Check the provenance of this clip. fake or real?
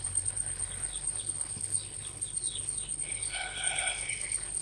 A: fake